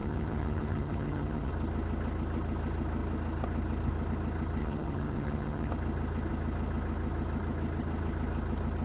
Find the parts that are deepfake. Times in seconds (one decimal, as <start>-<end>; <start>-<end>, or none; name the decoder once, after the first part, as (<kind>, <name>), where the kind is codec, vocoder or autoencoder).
0.0-1.5 (vocoder, HiFi-GAN); 4.6-5.7